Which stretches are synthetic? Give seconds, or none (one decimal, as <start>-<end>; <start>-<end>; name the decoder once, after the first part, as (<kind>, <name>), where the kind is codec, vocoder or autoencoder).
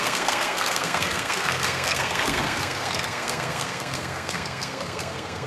0.0-5.5 (codec, SNAC)